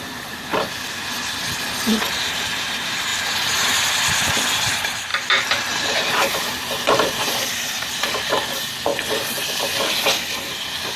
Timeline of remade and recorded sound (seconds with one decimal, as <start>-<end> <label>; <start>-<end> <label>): 0.0-0.5 remade; 0.5-2.1 recorded; 2.1-8.9 remade; 8.9-10.4 recorded; 10.4-11.0 remade